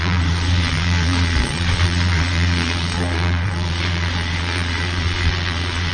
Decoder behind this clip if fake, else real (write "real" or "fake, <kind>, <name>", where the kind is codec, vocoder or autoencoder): fake, vocoder, Vocos